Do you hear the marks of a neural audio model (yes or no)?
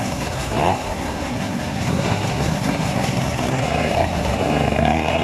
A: yes